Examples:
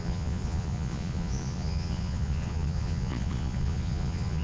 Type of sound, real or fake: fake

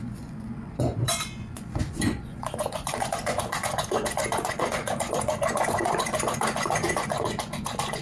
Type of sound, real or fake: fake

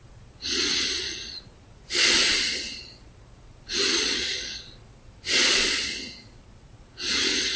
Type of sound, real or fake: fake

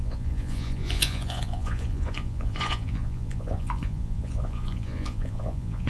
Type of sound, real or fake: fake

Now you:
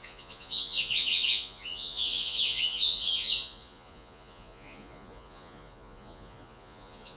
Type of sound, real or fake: fake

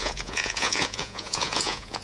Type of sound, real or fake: fake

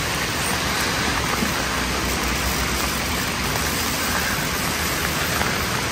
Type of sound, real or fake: real